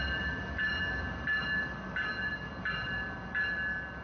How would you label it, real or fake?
real